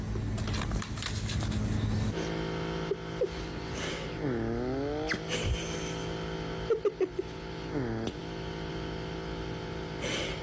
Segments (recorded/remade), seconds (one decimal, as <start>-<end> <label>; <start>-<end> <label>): 0.0-10.4 recorded